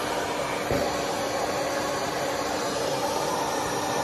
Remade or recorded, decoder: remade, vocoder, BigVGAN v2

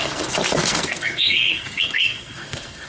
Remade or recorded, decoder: remade, codec, SNAC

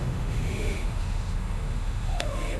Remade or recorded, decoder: remade, autoencoder, DAC-VAE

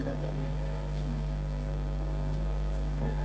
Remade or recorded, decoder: remade, codec, SNAC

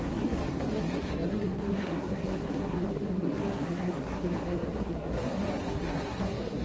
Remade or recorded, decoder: remade, codec, SNAC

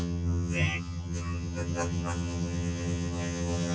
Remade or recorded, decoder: remade, vocoder, HiFi-GAN